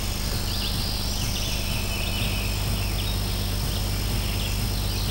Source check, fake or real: real